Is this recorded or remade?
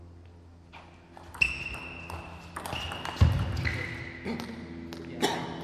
recorded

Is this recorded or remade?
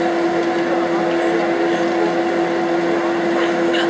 recorded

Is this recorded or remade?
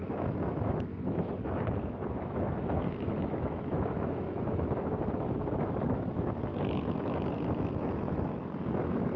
remade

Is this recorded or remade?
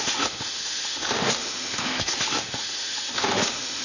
remade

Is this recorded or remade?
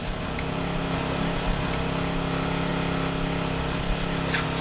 recorded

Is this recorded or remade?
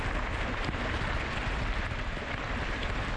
recorded